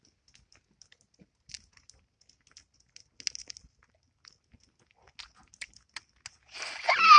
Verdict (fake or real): real